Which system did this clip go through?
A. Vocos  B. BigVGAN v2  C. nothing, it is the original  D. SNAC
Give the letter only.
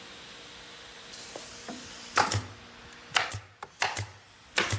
C